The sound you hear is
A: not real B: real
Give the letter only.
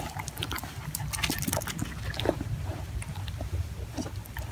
B